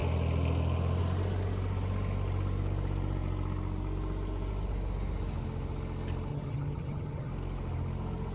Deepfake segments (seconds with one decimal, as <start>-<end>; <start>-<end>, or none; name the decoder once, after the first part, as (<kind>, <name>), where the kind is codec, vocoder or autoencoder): 6.3-7.3 (vocoder, HiFi-GAN)